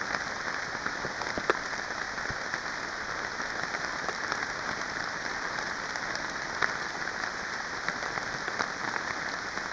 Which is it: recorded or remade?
recorded